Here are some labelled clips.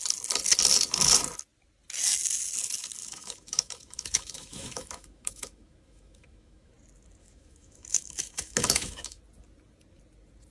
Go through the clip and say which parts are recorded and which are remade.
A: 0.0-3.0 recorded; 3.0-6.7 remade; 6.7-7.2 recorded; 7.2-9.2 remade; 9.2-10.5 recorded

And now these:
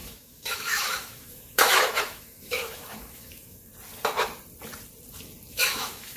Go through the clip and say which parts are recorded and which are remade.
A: 0.0-3.7 remade; 3.7-5.5 recorded; 5.5-6.2 remade